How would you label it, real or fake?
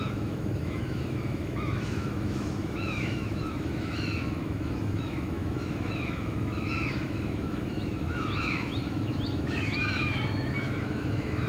fake